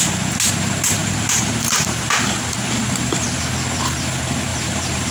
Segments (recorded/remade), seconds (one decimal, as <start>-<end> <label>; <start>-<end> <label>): 0.0-1.0 recorded; 1.0-3.4 remade; 3.4-4.5 recorded; 4.5-5.1 remade

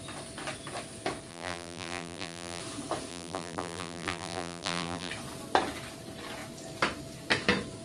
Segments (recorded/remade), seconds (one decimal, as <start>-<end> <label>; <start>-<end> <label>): 0.0-1.3 recorded; 1.3-2.6 remade; 2.6-3.1 recorded; 3.1-5.1 remade; 5.1-7.8 recorded

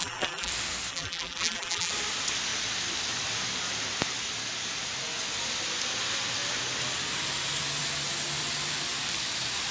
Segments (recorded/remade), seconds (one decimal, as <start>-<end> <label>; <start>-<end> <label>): 0.0-0.5 remade; 0.5-0.9 recorded; 0.9-1.9 remade; 1.9-9.7 recorded

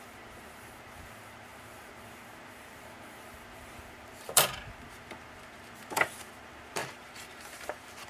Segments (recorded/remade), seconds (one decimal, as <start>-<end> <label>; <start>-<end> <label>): 0.0-8.1 remade

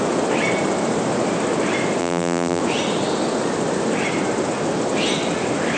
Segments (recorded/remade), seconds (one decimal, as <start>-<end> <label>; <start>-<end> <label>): 0.0-2.0 recorded; 2.0-2.6 remade; 2.6-5.8 recorded